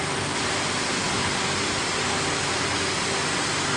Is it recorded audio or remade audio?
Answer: recorded